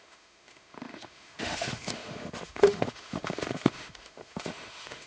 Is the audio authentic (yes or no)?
no